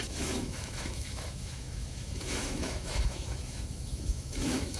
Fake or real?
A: fake